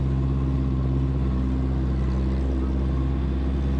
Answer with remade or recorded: recorded